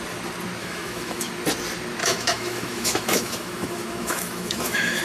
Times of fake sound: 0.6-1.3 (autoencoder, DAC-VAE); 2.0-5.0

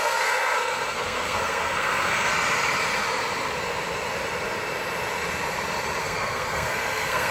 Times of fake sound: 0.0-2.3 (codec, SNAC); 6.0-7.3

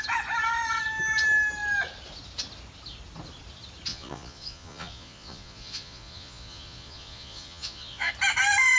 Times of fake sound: 3.9-8.1 (vocoder, Vocos)

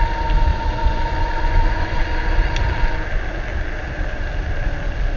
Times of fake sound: 0.5-2.0 (vocoder, Vocos)

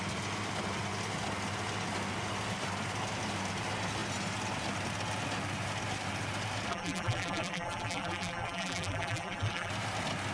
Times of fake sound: 6.7-9.7 (vocoder, BigVGAN v2)

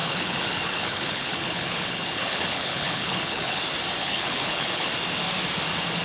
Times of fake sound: 0.0-3.6 (codec, HILCodec); 4.0-4.9